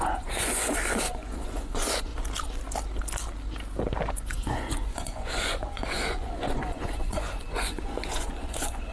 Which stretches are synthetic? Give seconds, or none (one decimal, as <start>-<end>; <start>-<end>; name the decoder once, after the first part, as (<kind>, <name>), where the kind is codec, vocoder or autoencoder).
0.0-2.1 (vocoder, Vocos); 4.1-8.9